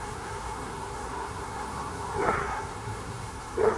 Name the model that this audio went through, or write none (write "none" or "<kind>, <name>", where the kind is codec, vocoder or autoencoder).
codec, SNAC